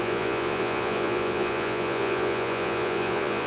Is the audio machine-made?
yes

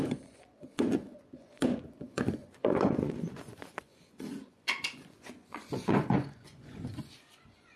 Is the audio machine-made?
yes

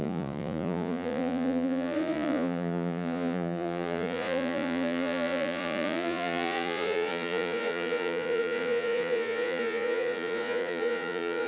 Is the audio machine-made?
yes